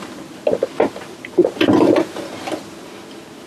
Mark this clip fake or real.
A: real